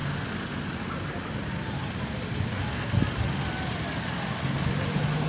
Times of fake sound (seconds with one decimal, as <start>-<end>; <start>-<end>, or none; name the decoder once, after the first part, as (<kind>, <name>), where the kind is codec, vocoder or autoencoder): none